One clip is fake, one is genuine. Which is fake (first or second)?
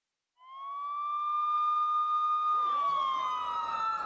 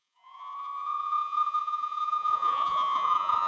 second